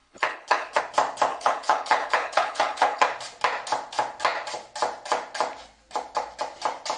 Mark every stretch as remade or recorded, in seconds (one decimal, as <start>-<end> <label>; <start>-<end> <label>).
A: 0.0-0.8 remade; 0.8-1.3 recorded; 1.3-3.1 remade; 3.1-7.0 recorded